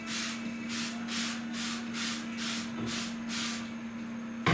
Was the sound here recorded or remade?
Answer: recorded